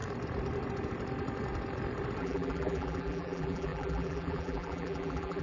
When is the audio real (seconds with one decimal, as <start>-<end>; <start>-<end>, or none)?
0.0-2.2

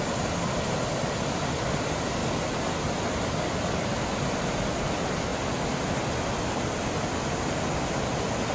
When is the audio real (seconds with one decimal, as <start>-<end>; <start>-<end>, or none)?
0.0-8.5